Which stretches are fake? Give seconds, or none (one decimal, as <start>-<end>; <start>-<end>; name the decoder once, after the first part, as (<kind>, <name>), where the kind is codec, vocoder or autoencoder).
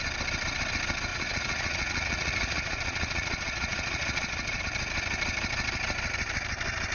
1.1-4.6 (vocoder, Vocos)